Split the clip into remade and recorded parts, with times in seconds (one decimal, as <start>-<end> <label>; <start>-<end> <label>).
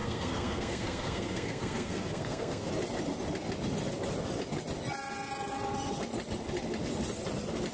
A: 0.0-2.7 remade; 2.7-7.7 recorded